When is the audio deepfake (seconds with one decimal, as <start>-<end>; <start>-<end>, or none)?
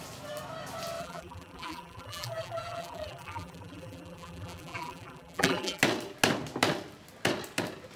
1.0-5.8